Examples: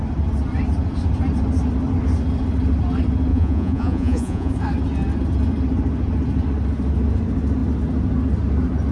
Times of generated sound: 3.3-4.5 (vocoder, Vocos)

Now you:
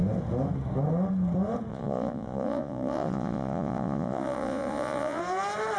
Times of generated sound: 1.7-5.2 (vocoder, Vocos)

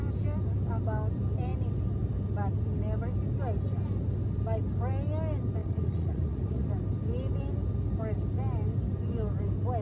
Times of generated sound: 5.6-6.7 (vocoder, Vocos)

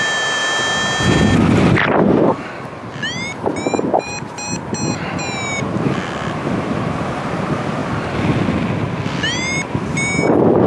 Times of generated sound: none

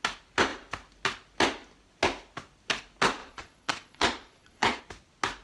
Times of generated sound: 3.2-4.8 (vocoder, Vocos)

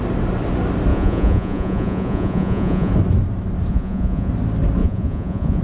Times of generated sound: 0.9-2.9 (vocoder, Vocos); 3.7-4.3; 4.8-5.6